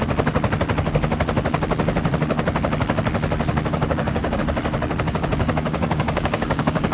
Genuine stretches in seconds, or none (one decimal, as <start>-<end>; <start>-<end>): 0.0-3.7; 4.4-5.1

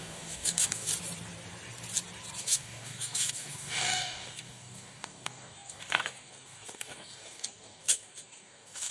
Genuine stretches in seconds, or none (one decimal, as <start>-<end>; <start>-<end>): 0.9-2.4

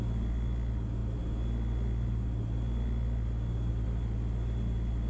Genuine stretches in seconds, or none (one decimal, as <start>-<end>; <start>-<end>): 0.0-5.1

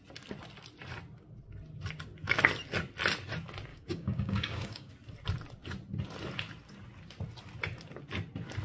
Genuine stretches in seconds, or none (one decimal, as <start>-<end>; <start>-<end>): 0.0-3.7; 4.9-8.6

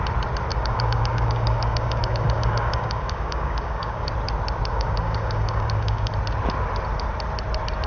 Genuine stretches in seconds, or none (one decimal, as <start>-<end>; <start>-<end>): 0.0-0.5; 4.1-4.7; 6.1-7.9

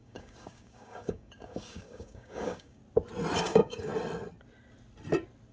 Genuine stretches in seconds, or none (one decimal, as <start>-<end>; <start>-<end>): 2.8-3.4; 3.9-5.5

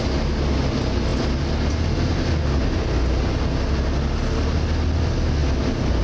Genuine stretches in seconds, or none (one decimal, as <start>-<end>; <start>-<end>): 0.0-6.0

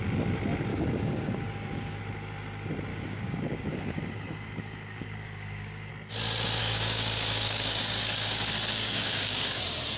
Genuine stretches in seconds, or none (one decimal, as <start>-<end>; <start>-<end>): 0.0-0.7; 2.0-2.9; 5.9-6.6; 9.6-10.0